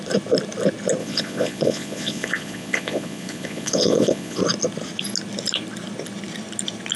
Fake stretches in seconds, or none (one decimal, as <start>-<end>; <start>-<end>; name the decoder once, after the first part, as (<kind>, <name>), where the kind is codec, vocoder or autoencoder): 1.0-4.4 (vocoder, Vocos)